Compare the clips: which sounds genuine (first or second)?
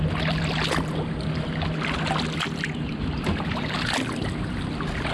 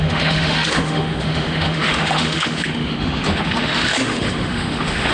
first